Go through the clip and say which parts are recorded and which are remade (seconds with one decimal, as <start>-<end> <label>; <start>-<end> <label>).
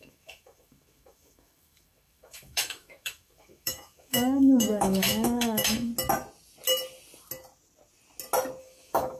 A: 0.0-5.9 remade; 5.9-8.6 recorded; 8.6-9.2 remade